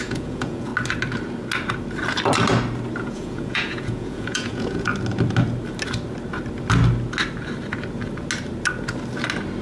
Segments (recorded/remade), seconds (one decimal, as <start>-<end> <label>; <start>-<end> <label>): 0.0-0.7 remade; 0.7-3.0 recorded; 3.0-4.9 remade; 4.9-9.6 recorded